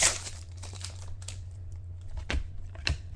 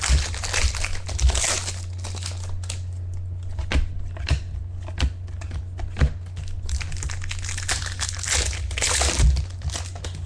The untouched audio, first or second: second